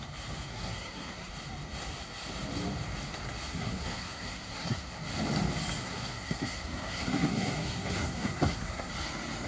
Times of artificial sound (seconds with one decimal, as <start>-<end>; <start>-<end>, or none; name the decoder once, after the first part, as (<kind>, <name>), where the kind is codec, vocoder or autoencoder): 0.5-1.3 (codec, SNAC); 3.5-5.0; 5.8-8.9